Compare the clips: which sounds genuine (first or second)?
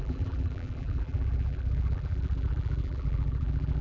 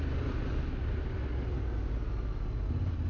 second